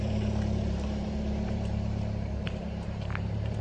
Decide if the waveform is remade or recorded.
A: remade